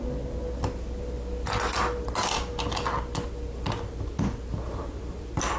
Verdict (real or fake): real